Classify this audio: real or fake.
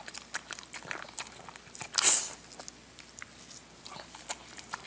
real